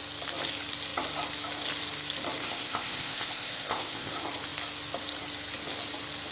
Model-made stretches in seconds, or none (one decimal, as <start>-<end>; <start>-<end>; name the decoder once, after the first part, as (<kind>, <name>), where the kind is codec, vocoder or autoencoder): 2.4-4.1 (codec, ZipCodec)